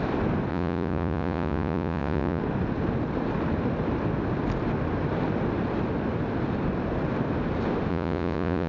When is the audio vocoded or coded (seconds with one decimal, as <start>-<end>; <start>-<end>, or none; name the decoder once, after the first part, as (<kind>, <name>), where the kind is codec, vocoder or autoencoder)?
0.5-2.4 (vocoder, Vocos); 7.9-8.7